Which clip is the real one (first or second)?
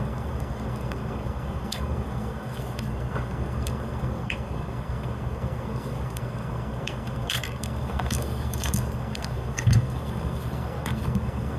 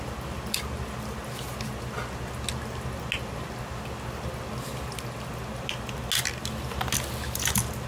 second